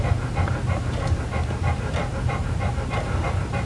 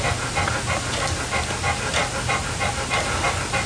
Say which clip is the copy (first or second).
first